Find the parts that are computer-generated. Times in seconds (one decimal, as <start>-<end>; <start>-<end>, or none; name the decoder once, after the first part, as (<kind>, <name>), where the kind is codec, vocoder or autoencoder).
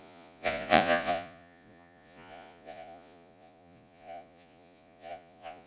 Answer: 0.0-5.7 (vocoder, Vocos)